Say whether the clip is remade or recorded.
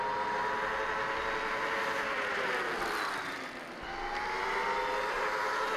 recorded